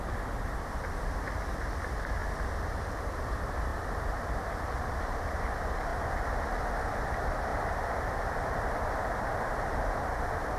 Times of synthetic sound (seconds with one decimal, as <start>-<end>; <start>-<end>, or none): 0.0-2.2; 3.0-10.6